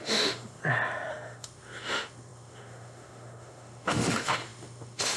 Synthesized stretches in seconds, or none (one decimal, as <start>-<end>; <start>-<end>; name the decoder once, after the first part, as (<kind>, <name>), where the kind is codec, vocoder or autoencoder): 0.0-0.6 (autoencoder, DAC-VAE); 1.1-5.2